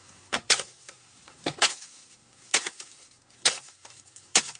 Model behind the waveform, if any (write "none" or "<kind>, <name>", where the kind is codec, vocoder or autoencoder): codec, SNAC